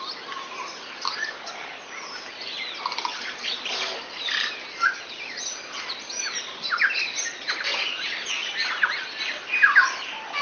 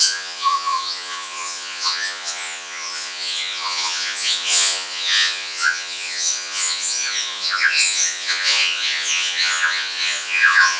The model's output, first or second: second